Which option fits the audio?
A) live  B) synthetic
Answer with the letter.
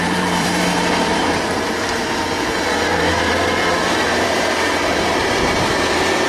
B